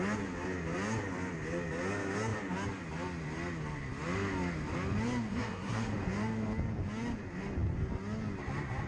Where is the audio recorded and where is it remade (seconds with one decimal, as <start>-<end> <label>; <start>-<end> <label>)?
0.0-5.3 recorded; 5.3-5.9 remade; 5.9-8.9 recorded